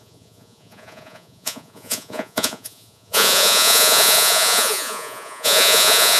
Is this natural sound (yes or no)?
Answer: no